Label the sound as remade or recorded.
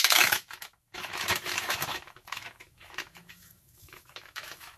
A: remade